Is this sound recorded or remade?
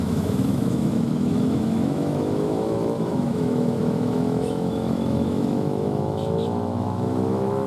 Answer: remade